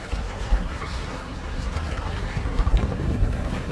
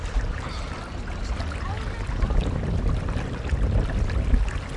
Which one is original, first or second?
second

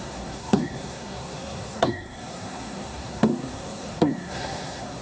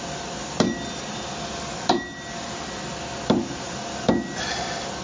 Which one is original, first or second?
second